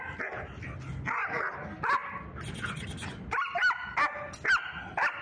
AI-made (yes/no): no